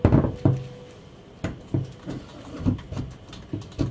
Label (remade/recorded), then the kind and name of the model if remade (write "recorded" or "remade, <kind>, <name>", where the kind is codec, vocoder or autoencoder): recorded